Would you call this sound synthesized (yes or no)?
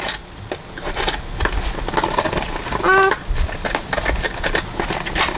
no